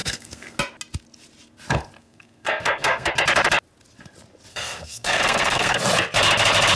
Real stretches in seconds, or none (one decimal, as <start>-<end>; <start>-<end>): 0.6-2.0; 3.1-4.5; 5.8-6.8